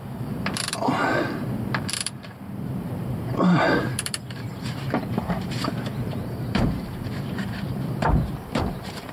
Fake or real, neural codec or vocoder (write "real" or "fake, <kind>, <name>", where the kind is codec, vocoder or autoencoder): fake, vocoder, BigVGAN v2